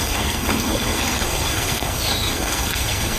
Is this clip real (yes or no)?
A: no